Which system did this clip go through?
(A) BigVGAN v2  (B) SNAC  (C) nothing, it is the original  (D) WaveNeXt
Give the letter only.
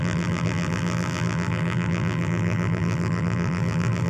A